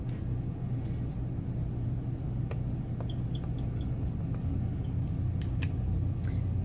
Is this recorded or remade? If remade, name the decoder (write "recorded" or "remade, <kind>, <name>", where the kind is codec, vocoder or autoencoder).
recorded